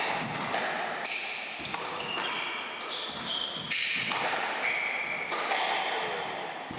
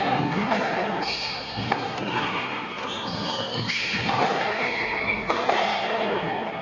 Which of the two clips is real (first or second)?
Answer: first